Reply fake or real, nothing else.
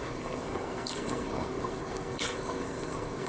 fake